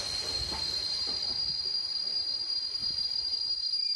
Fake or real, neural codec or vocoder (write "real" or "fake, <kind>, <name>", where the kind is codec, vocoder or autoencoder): real